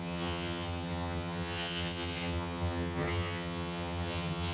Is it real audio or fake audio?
fake